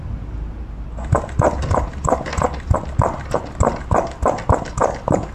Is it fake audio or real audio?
real